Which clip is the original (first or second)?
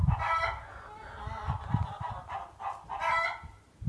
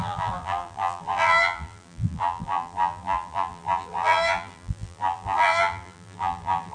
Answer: first